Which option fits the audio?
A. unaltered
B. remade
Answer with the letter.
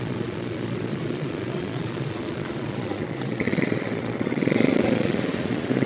B